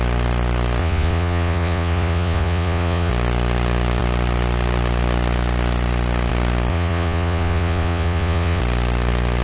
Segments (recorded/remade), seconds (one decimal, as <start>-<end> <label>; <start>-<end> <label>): 0.0-0.8 recorded; 0.8-3.1 remade; 3.1-6.7 recorded; 6.7-8.6 remade; 8.6-9.4 recorded